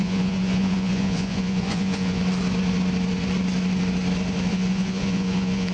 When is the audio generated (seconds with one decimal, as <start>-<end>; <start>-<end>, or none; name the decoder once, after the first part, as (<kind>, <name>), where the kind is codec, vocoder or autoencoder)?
0.0-2.2 (vocoder, Vocos); 4.5-5.7